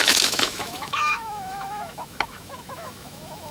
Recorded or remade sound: remade